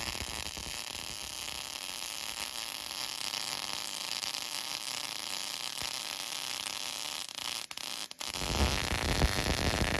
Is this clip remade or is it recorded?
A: recorded